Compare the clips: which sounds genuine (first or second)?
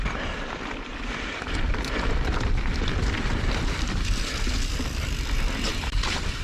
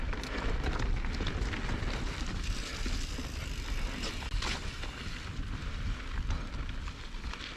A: second